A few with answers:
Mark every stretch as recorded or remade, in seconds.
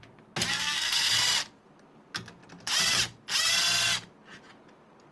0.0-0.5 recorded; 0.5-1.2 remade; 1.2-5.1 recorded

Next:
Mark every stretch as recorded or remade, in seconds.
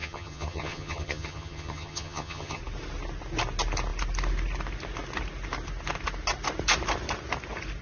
0.0-2.6 remade; 2.6-7.8 recorded